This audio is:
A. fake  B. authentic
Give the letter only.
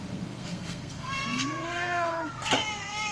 A